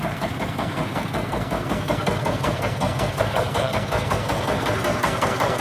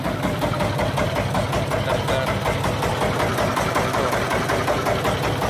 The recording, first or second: second